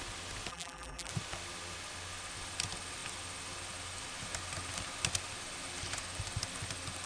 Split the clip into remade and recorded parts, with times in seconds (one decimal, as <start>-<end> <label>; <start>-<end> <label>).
0.0-0.5 recorded; 0.5-1.1 remade; 1.1-7.1 recorded